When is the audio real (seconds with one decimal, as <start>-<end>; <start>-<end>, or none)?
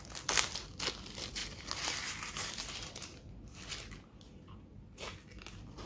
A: 0.0-5.9